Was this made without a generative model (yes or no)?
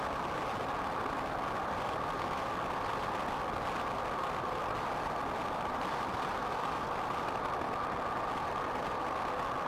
yes